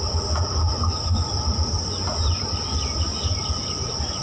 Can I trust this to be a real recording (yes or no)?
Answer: yes